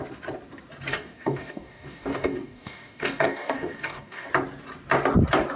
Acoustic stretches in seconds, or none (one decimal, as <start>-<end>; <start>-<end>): 0.0-0.9; 4.3-5.6